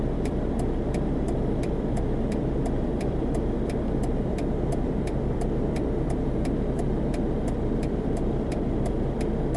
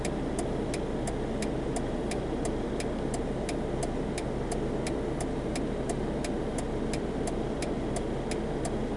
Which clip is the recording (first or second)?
second